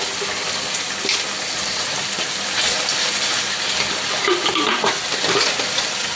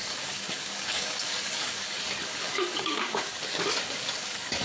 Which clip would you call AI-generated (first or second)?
second